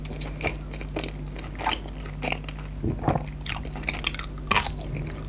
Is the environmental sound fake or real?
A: real